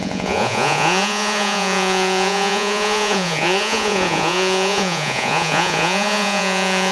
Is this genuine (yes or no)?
no